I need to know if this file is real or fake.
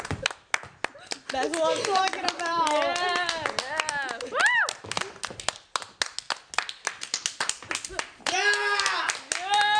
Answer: real